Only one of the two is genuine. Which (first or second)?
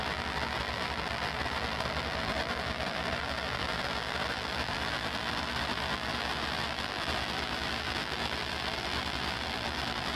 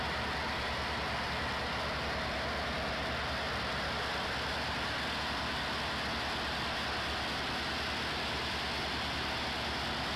second